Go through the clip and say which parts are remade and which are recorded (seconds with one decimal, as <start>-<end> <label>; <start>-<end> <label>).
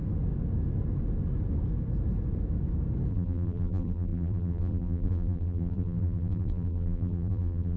0.0-3.1 recorded; 3.1-7.8 remade